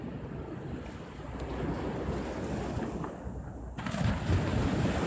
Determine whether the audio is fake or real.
real